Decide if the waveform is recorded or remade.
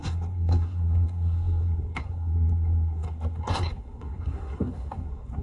remade